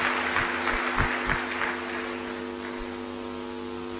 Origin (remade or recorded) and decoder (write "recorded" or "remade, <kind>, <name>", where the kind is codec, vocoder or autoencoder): recorded